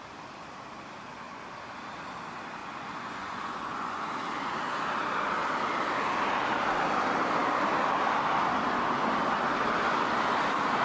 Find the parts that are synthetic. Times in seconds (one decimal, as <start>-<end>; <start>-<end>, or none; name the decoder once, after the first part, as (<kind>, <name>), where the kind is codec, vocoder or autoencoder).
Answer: 2.6-4.1 (vocoder, Vocos)